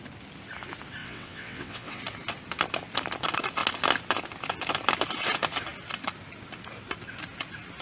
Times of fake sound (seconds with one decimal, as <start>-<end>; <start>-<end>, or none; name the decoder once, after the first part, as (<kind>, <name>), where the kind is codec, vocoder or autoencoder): 1.0-2.0 (vocoder, WaveNeXt)